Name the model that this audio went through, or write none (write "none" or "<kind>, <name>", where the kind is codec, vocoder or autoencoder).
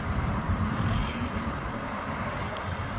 vocoder, BigVGAN v2